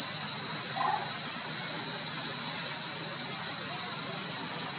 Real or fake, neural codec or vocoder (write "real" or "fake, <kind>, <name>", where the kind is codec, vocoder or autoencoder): real